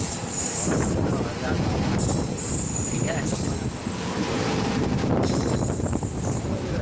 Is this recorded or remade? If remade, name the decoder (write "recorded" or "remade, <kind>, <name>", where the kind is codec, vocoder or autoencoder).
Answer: remade, vocoder, BigVGAN v2